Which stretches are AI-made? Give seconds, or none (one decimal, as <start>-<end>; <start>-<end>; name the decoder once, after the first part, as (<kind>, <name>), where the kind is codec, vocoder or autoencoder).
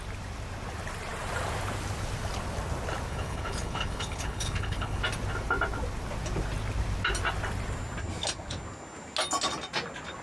3.1-5.0 (codec, HILCodec)